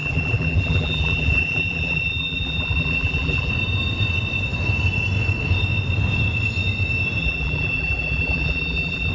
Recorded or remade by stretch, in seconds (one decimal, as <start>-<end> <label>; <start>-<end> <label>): 0.0-3.5 remade; 3.5-7.2 recorded; 7.2-9.1 remade